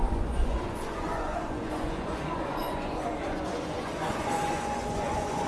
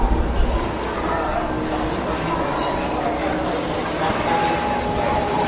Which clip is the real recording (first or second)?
second